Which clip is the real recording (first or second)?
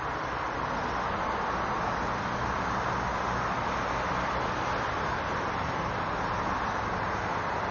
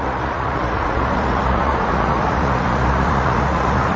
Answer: first